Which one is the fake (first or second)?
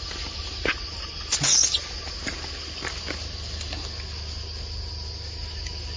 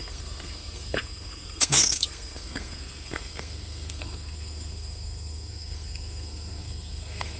second